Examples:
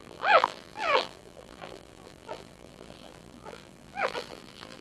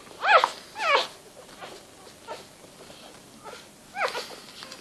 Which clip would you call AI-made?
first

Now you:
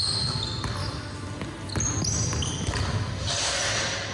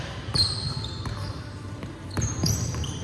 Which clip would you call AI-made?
second